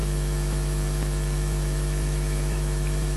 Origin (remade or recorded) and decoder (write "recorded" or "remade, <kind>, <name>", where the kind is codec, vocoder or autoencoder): remade, autoencoder, DAC-VAE